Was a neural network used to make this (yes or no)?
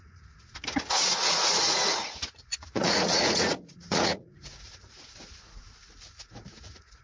yes